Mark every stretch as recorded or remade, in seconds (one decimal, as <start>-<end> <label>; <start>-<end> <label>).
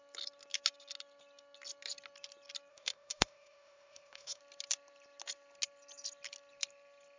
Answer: 0.0-2.7 recorded; 2.7-4.4 remade; 4.4-7.2 recorded